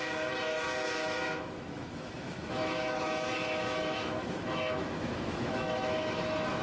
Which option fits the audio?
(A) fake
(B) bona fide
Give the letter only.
A